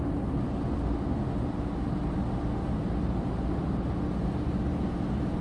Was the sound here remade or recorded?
recorded